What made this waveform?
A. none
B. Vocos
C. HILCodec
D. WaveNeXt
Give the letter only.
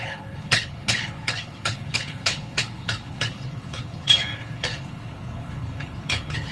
C